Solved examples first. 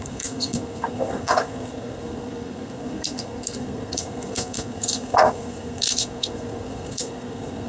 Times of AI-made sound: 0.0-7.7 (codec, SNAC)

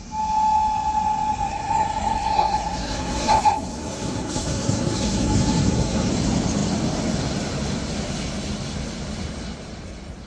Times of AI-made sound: 1.5-6.1 (codec, SNAC)

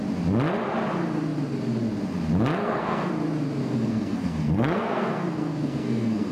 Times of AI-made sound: 2.6-3.1 (codec, SNAC); 3.6-6.3

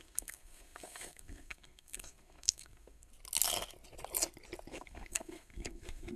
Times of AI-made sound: 0.0-3.1 (codec, SNAC); 4.7-6.2

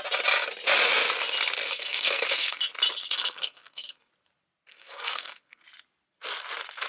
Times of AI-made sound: 1.6-2.6 (codec, SNAC); 3.0-4.1; 4.7-5.6